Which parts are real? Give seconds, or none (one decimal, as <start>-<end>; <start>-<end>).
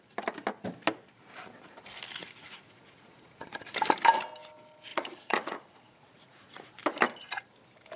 0.0-2.2; 3.7-4.9; 6.7-8.0